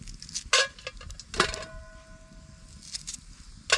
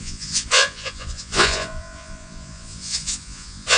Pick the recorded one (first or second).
first